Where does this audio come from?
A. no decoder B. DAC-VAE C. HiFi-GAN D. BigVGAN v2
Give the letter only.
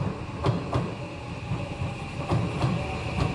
A